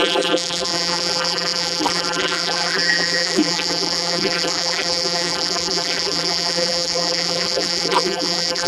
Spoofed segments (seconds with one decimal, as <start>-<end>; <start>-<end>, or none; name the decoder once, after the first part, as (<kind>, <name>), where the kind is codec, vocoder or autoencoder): 0.0-8.7 (vocoder, BigVGAN v2)